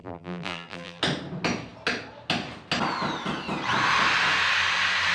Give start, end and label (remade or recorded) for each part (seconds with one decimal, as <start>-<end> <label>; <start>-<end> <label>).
0.0-1.0 remade; 1.0-5.1 recorded